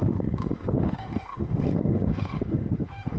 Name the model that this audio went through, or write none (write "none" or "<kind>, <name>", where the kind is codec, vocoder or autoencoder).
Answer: autoencoder, DAC-VAE